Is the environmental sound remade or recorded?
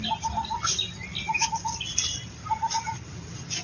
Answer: recorded